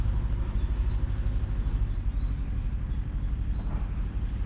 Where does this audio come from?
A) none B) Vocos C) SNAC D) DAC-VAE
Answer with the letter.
A